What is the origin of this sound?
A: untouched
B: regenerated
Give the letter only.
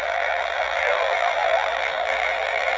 B